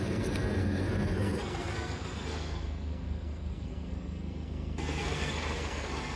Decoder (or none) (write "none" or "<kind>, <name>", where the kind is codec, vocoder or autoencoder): codec, SNAC